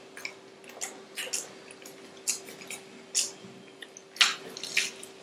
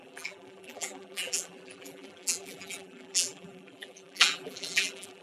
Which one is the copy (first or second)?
second